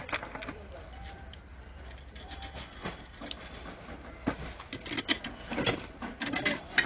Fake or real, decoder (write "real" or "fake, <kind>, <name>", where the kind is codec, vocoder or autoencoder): real